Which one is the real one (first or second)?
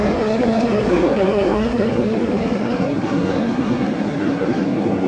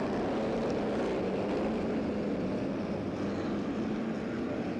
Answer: second